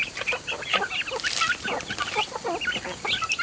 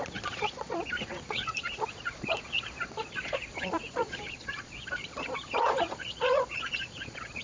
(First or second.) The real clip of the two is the first